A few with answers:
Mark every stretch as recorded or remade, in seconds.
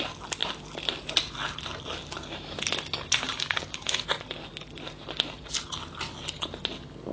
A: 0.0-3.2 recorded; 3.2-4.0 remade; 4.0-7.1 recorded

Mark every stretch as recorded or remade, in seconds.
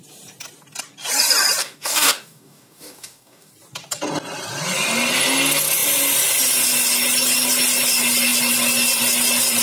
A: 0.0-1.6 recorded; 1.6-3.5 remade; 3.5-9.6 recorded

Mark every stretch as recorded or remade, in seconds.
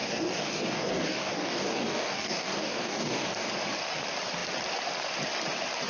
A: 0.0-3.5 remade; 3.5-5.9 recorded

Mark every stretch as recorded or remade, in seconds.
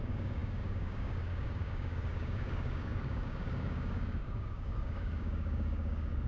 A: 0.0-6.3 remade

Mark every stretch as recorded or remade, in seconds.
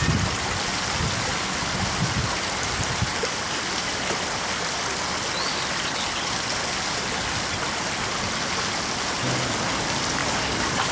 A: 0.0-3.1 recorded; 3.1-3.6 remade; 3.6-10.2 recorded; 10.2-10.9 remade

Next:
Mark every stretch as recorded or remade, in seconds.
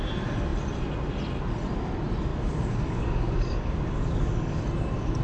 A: 0.0-2.3 recorded; 2.3-4.6 remade; 4.6-5.2 recorded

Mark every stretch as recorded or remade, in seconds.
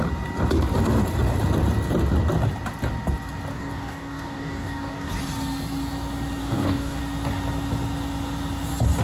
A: 0.0-3.5 recorded; 3.5-5.1 remade; 5.1-6.4 recorded; 6.4-7.0 remade; 7.0-9.0 recorded